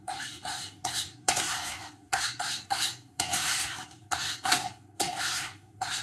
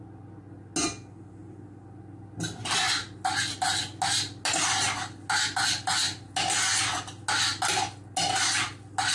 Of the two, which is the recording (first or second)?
second